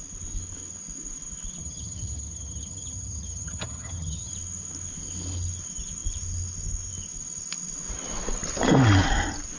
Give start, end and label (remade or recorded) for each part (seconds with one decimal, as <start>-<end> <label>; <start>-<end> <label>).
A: 0.0-1.6 recorded; 1.6-4.3 remade; 4.3-9.6 recorded